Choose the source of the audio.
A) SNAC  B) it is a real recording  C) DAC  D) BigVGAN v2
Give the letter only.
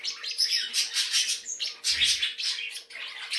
B